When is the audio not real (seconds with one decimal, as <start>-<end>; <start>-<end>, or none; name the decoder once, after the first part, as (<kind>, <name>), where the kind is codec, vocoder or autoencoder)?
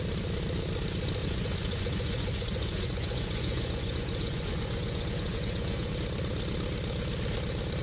1.2-5.9 (vocoder, Vocos)